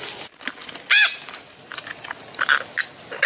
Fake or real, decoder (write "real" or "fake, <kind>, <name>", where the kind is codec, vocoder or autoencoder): real